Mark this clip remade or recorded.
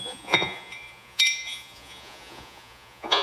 remade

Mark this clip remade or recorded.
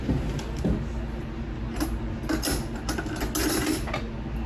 recorded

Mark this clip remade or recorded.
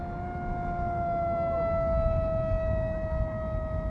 recorded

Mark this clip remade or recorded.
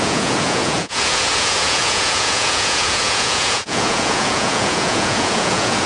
remade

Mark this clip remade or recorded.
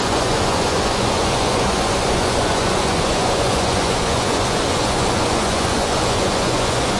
remade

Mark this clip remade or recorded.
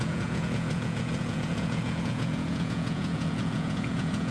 remade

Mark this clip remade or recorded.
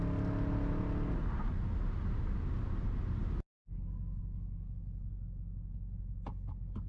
recorded